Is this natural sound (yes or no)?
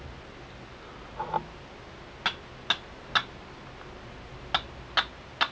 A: yes